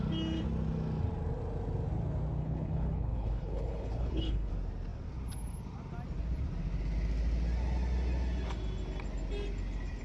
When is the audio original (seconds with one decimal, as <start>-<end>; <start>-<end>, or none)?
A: 0.0-2.4; 4.5-10.0